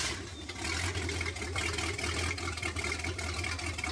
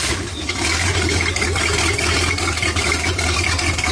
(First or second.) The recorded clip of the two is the first